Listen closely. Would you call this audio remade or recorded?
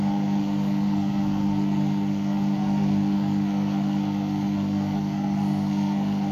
remade